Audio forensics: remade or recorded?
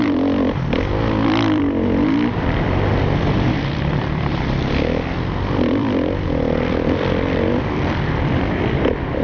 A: remade